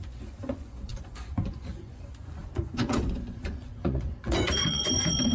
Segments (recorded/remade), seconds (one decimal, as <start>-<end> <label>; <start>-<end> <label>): 0.0-5.3 remade